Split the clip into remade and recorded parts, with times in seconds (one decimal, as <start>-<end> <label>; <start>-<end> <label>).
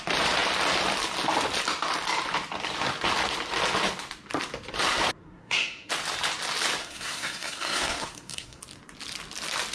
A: 0.0-5.2 recorded; 5.2-5.9 remade; 5.9-6.8 recorded; 6.8-8.6 remade; 8.6-9.7 recorded